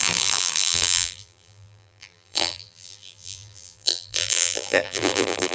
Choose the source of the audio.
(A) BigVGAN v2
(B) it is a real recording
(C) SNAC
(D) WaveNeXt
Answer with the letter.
A